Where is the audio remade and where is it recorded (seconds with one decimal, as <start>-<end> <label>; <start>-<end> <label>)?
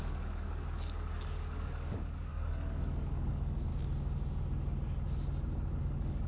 0.0-3.7 remade; 3.7-5.8 recorded; 5.8-6.3 remade